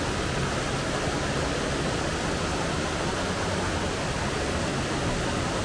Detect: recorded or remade recorded